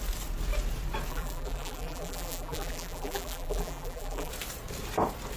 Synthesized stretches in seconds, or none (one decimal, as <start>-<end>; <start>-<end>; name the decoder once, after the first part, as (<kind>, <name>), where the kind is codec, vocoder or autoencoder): 1.1-4.3 (vocoder, BigVGAN v2)